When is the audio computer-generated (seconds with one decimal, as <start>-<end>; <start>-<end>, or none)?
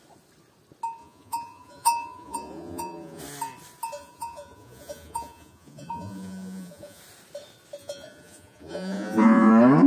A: 1.0-3.2; 4.0-7.0; 7.8-9.5